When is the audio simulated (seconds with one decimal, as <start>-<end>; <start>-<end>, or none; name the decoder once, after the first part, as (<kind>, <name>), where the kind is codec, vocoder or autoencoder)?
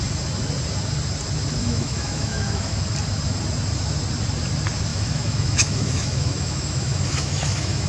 1.6-2.8 (autoencoder, DAC-VAE); 4.9-7.9